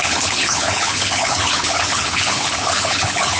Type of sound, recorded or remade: remade